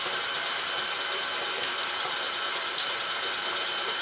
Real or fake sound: real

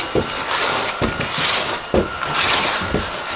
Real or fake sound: real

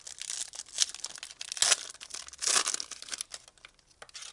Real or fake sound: real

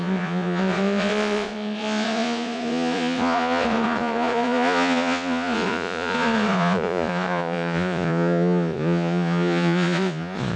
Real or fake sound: fake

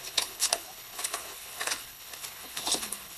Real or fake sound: fake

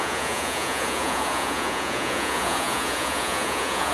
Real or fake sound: fake